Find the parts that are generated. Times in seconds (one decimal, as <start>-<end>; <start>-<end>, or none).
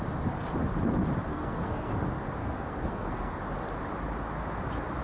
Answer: 1.3-1.9; 2.4-3.4